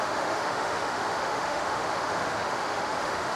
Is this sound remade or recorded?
remade